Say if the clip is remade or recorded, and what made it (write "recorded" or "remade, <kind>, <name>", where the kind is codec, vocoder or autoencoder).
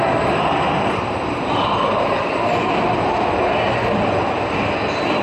recorded